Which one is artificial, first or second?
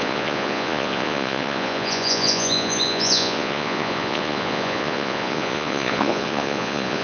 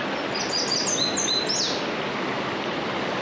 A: first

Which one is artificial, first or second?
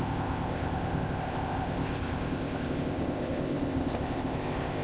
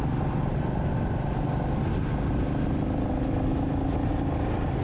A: first